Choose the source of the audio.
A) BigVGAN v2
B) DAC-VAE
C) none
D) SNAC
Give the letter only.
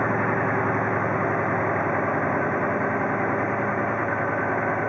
C